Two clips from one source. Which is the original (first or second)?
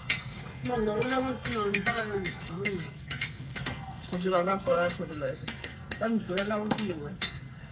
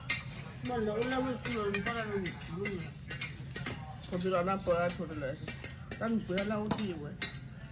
second